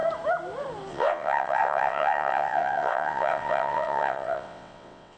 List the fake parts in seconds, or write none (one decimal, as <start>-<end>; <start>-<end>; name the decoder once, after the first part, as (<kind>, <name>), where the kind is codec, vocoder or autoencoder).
0.9-5.2 (vocoder, WaveNeXt)